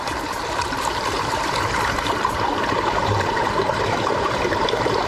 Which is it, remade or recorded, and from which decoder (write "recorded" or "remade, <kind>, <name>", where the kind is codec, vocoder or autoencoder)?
remade, vocoder, BigVGAN v2